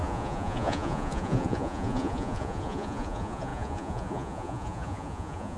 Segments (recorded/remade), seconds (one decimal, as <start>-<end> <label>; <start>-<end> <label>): 0.0-5.6 remade